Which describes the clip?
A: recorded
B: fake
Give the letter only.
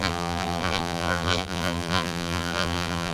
B